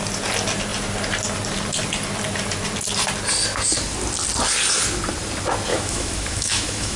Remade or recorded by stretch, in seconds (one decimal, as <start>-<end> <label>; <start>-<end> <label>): 0.0-5.7 recorded; 5.7-7.0 remade